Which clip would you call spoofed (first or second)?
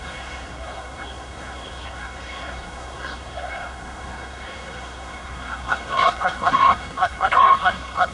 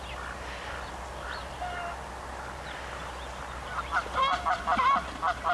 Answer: first